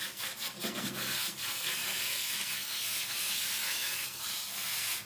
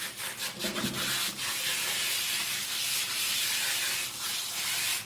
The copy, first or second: first